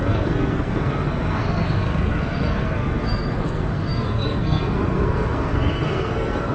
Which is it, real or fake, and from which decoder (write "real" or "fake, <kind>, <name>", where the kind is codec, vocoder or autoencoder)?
fake, codec, SNAC